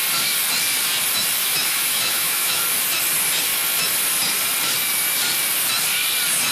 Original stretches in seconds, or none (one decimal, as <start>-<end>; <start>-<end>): 0.0-1.4; 2.6-6.5

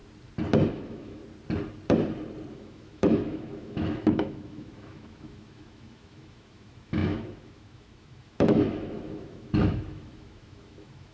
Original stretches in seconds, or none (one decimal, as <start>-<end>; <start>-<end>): 0.0-0.7; 1.2-2.5

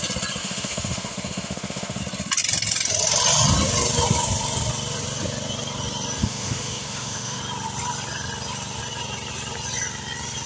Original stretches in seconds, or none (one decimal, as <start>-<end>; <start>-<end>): 0.0-0.4; 2.0-6.2; 7.4-10.5

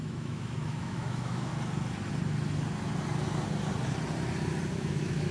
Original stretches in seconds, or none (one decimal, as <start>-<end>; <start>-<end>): 1.5-4.7

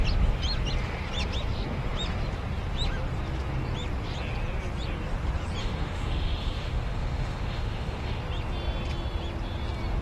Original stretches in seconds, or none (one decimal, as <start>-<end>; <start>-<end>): 0.0-5.6; 8.2-10.0